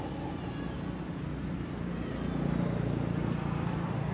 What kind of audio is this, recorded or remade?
recorded